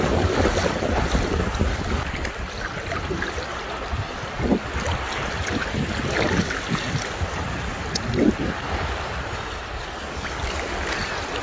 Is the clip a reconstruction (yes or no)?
no